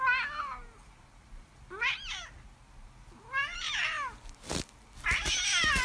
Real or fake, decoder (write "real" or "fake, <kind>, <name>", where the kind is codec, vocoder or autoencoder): real